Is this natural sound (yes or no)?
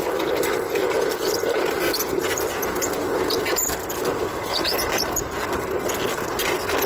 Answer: yes